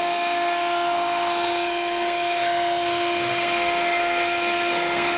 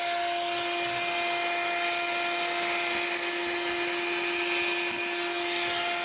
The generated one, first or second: first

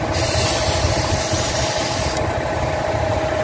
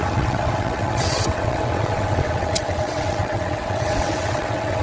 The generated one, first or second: second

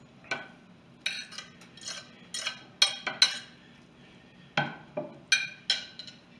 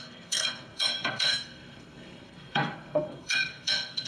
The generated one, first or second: second